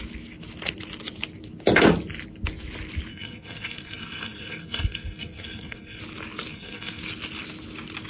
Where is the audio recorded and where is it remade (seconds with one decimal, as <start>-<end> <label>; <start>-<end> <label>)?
0.0-3.1 recorded; 3.1-6.0 remade; 6.0-6.5 recorded; 6.5-7.0 remade; 7.0-8.1 recorded